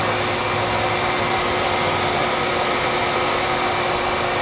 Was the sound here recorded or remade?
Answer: recorded